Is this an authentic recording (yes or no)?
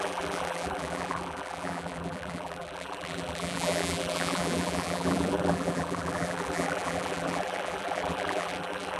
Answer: no